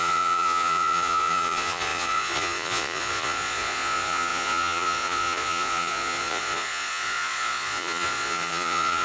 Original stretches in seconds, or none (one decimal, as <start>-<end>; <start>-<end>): none

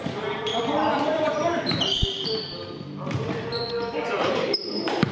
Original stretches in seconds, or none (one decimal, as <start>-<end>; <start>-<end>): 0.5-1.0; 3.5-4.2

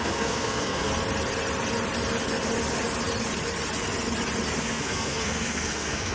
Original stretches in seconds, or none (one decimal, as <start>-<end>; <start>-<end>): 0.9-4.6

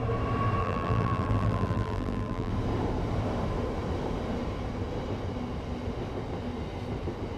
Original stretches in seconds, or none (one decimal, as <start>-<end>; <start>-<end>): 0.0-0.6; 2.5-7.4

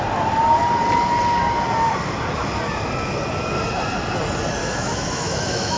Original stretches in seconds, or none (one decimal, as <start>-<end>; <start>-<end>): 0.0-4.6

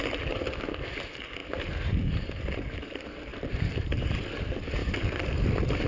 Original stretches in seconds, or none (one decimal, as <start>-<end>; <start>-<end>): 0.0-3.3; 4.3-4.8; 5.4-5.9

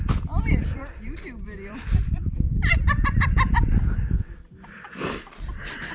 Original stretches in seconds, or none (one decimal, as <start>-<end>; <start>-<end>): none